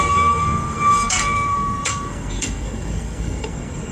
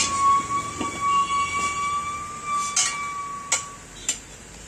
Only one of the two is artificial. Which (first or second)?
first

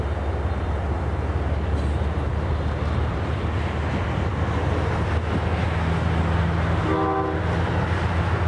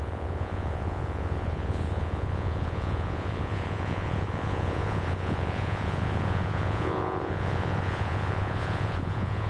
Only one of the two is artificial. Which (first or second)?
second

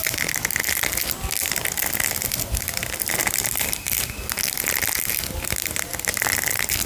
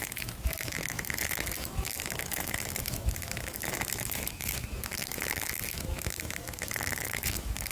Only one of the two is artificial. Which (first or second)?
second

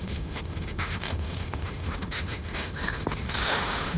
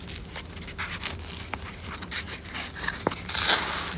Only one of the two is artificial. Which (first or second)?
first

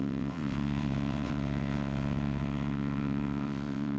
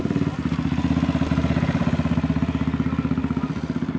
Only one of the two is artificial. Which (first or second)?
first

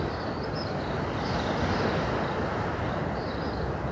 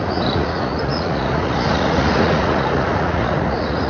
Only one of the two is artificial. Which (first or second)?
second